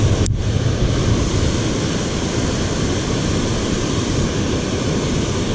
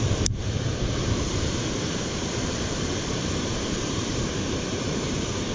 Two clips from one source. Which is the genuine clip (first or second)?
first